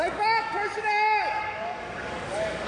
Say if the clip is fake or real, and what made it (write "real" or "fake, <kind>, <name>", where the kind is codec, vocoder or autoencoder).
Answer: fake, codec, DAC